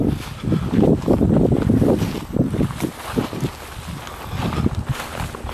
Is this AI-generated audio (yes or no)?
no